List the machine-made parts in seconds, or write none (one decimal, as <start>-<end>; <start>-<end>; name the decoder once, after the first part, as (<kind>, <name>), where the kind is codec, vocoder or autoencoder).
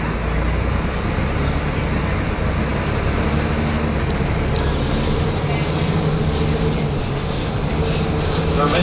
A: 7.0-7.5 (autoencoder, DAC-VAE)